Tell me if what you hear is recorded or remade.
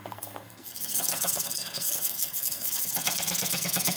remade